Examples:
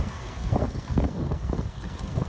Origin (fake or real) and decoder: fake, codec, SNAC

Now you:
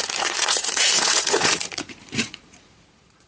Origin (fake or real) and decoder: fake, vocoder, Vocos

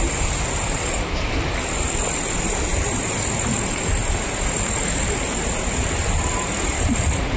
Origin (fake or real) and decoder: real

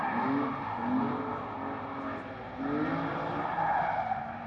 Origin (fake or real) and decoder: real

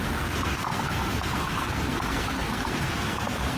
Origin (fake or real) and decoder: fake, codec, SNAC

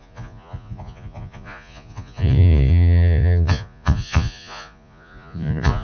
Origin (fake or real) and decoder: fake, vocoder, Vocos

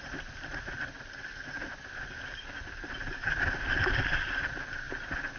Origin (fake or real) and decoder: real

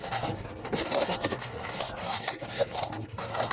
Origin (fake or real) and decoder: fake, codec, SNAC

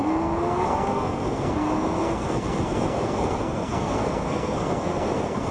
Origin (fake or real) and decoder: fake, codec, SNAC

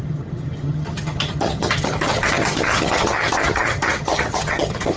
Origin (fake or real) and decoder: fake, vocoder, HiFi-GAN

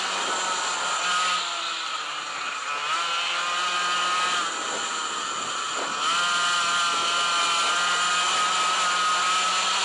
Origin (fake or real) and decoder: real